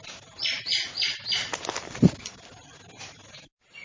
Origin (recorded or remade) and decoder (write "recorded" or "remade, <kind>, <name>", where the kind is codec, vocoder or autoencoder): recorded